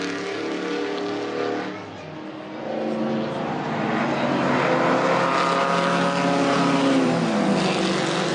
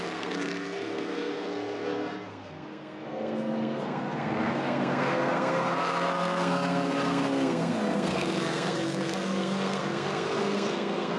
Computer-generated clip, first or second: second